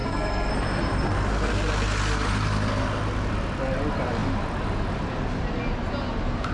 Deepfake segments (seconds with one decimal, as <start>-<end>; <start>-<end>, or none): 0.0-0.5